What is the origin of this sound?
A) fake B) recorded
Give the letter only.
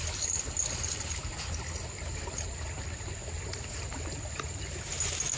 B